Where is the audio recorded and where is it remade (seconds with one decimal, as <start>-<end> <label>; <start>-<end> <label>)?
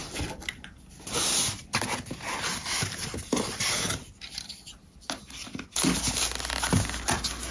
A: 0.0-7.5 recorded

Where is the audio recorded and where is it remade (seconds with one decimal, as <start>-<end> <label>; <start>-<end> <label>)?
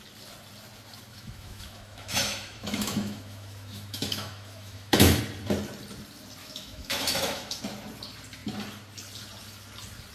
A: 0.0-1.1 recorded; 1.1-5.2 remade; 5.2-6.4 recorded; 6.4-7.6 remade; 7.6-10.1 recorded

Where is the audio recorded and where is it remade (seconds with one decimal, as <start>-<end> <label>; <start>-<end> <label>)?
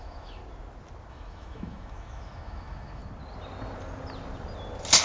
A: 0.0-0.4 remade; 0.4-1.1 recorded; 1.1-3.0 remade; 3.0-5.0 recorded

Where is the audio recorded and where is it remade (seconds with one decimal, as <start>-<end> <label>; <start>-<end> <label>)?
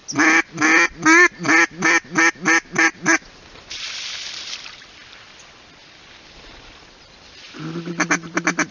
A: 0.0-8.7 recorded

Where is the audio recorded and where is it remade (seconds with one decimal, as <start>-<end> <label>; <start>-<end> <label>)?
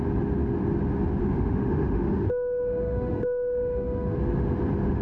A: 0.0-1.2 recorded; 1.2-4.2 remade; 4.2-5.0 recorded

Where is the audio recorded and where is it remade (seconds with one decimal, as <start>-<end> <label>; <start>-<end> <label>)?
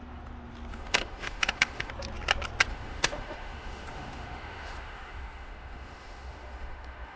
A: 0.0-0.7 recorded; 0.7-1.9 remade; 1.9-2.7 recorded; 2.7-7.2 remade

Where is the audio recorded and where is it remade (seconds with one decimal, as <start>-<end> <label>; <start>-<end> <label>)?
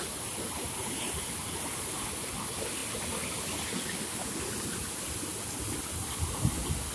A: 0.0-6.9 recorded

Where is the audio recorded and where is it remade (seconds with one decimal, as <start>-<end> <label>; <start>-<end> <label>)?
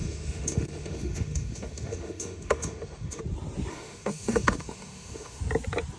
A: 0.0-3.2 remade; 3.2-3.7 recorded; 3.7-5.4 remade; 5.4-6.0 recorded